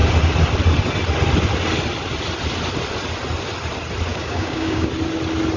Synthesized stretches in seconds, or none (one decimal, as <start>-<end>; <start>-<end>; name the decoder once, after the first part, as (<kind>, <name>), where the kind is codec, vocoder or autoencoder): 4.1-4.9 (codec, DAC)